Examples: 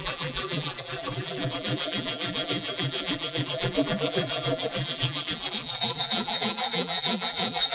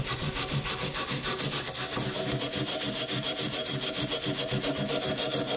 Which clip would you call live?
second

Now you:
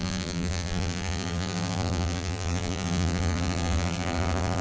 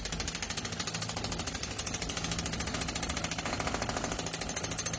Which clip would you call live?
second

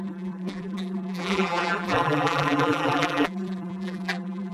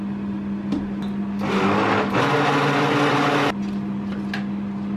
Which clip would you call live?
second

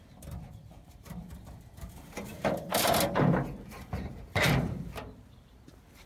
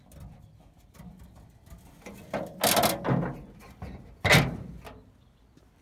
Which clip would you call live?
second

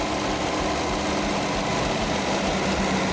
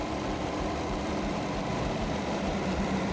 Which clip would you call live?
first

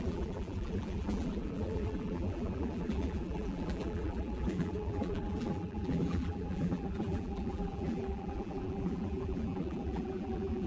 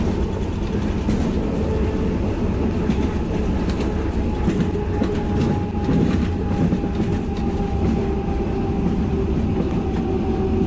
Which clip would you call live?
second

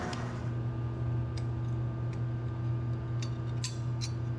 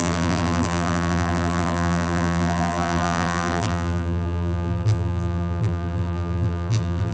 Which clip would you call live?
first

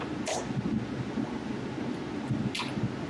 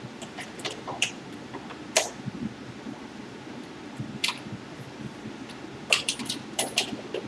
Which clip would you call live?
first